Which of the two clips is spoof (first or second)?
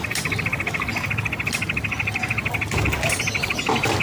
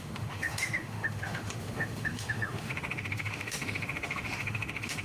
second